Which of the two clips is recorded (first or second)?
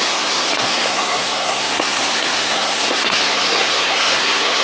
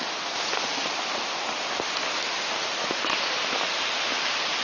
second